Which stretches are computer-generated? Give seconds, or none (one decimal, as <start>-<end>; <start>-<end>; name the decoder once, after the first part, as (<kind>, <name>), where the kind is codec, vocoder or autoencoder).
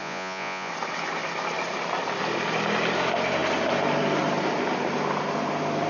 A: 0.0-0.7 (vocoder, Vocos)